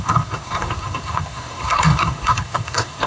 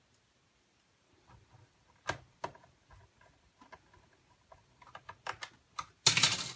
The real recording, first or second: second